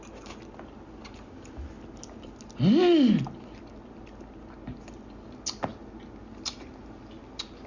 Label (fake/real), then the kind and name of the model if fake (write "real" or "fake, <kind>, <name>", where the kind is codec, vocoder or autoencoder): real